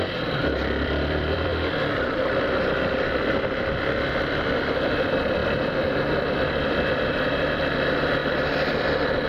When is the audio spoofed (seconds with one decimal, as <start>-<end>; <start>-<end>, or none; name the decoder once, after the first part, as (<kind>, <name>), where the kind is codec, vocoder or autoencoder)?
0.0-1.5 (vocoder, BigVGAN v2); 4.9-8.2; 8.7-9.3

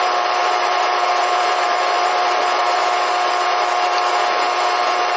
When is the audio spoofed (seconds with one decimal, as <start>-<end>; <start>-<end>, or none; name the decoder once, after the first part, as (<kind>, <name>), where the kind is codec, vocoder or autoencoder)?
0.0-2.8 (vocoder, BigVGAN v2)

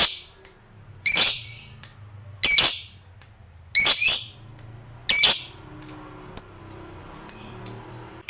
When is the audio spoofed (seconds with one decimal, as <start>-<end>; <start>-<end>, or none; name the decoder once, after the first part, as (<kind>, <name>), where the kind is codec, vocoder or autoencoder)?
0.9-1.9 (vocoder, BigVGAN v2); 6.6-8.3

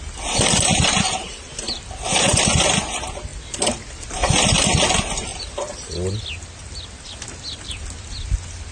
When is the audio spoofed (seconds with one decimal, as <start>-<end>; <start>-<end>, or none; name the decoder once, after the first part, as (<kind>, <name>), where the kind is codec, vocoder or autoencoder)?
none

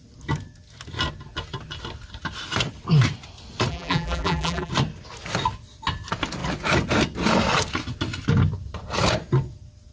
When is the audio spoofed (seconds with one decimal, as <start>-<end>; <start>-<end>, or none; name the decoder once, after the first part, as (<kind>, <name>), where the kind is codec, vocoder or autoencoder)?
3.7-4.7 (vocoder, BigVGAN v2)

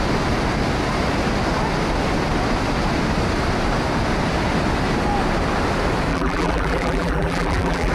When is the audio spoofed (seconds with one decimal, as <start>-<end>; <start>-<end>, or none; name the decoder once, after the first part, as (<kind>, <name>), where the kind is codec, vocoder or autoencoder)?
6.1-7.9 (vocoder, BigVGAN v2)

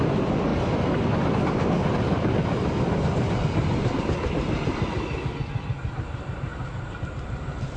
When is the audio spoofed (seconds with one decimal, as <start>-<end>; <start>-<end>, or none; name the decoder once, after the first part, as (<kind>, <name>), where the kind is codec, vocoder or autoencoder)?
0.5-4.0 (vocoder, BigVGAN v2); 6.5-7.0

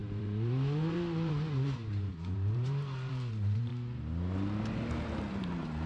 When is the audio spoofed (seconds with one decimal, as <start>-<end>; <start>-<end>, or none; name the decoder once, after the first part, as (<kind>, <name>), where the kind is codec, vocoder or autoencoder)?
0.0-3.7 (vocoder, BigVGAN v2); 5.3-5.9